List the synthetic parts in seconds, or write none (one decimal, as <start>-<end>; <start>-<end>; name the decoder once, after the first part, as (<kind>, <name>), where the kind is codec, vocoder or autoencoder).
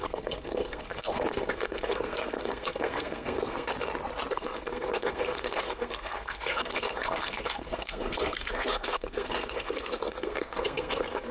0.0-3.7 (codec, SNAC); 4.3-11.3